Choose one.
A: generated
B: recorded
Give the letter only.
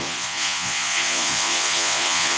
A